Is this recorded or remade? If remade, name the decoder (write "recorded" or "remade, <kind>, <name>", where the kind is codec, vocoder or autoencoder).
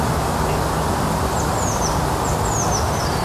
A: recorded